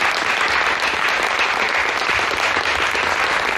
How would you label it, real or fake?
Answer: real